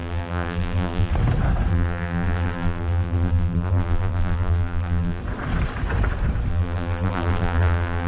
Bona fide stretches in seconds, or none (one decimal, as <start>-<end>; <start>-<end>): 1.1-1.7; 5.2-6.5